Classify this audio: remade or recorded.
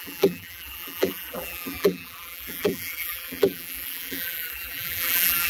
remade